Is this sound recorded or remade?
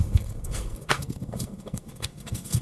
remade